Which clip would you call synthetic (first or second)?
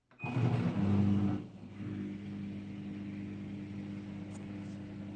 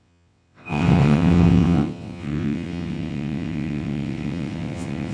second